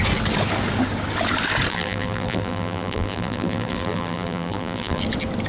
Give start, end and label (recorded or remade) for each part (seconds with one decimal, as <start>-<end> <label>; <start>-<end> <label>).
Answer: 0.0-1.7 recorded; 1.7-5.0 remade; 5.0-5.5 recorded